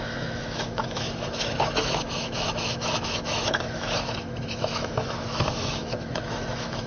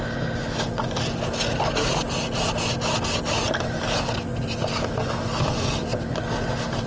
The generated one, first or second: first